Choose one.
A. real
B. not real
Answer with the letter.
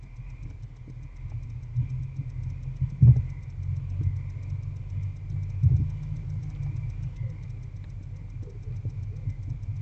A